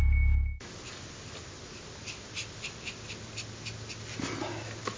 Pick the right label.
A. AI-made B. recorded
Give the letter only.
B